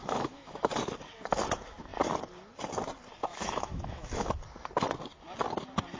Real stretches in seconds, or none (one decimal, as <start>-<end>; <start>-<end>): 0.7-3.3; 4.3-6.0

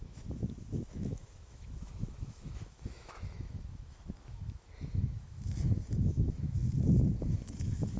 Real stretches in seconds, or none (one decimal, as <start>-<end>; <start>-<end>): 6.6-7.3

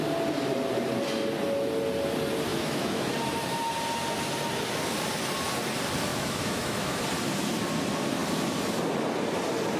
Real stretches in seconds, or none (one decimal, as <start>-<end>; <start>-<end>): 0.0-2.5; 3.1-6.1; 7.0-9.8